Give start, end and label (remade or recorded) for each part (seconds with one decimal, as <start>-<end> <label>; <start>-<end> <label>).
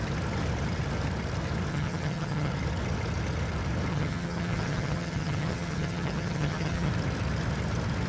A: 0.0-1.7 recorded; 1.7-2.5 remade; 2.5-3.9 recorded; 3.9-6.9 remade; 6.9-8.1 recorded